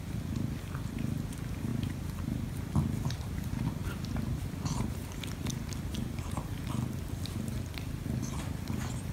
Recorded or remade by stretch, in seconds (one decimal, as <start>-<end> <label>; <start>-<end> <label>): 0.0-1.7 recorded; 1.7-2.5 remade; 2.5-9.1 recorded